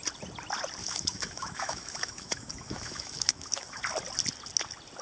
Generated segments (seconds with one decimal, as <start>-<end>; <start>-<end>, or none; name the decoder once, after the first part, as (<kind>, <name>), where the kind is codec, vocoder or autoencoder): 0.8-3.8 (autoencoder, DAC-VAE)